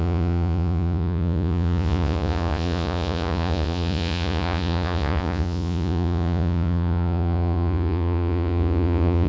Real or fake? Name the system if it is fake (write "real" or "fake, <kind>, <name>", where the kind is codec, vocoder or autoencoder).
fake, vocoder, Vocos